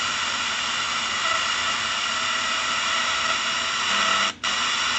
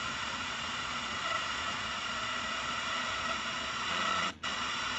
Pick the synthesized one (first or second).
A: second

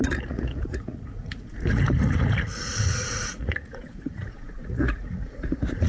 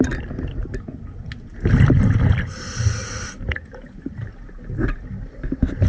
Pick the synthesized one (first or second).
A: first